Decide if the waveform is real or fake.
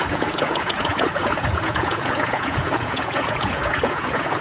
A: fake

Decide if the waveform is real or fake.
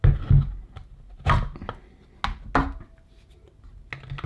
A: real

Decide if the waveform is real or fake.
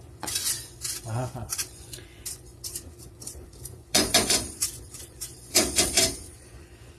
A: fake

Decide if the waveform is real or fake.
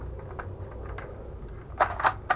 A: real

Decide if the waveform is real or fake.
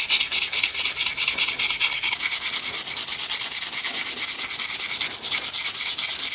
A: real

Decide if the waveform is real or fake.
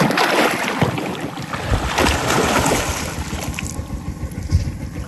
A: real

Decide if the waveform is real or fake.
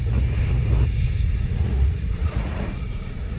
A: fake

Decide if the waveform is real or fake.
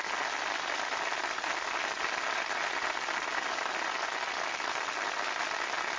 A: real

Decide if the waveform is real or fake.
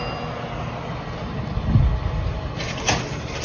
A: real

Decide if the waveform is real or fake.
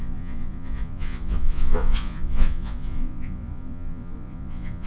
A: fake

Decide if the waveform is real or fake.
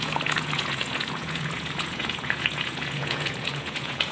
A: fake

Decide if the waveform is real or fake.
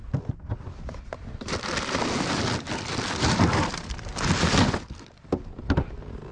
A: real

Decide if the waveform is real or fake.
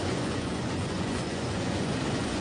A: fake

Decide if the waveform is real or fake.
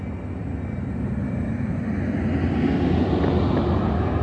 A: real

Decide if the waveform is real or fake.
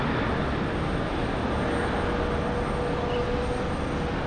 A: real